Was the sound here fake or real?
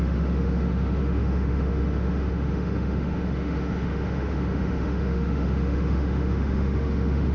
fake